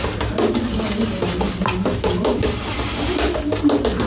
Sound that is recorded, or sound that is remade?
recorded